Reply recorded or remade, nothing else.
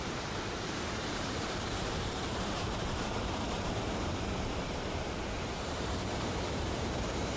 remade